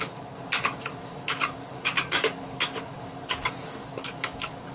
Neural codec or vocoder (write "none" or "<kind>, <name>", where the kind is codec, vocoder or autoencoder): codec, DAC